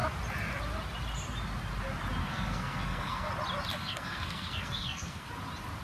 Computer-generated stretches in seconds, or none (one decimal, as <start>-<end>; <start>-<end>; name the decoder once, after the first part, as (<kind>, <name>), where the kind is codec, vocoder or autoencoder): 2.2-3.3 (codec, SNAC); 3.7-5.3